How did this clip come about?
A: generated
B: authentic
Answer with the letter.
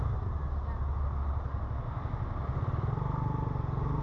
B